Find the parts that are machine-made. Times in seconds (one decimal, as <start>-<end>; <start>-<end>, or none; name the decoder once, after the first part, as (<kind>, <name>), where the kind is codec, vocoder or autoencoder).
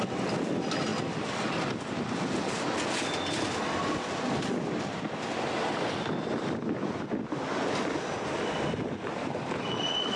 none